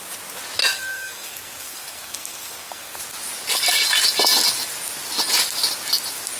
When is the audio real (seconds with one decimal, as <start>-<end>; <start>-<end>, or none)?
0.0-0.6; 3.0-6.4